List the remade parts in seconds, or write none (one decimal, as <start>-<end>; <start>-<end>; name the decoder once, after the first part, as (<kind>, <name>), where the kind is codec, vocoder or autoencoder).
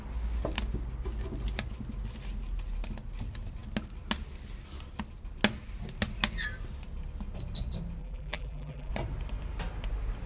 8.0-8.9 (vocoder, BigVGAN v2)